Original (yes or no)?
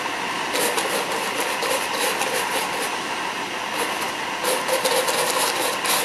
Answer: yes